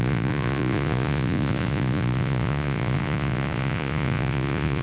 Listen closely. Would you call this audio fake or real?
fake